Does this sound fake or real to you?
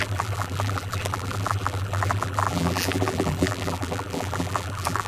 fake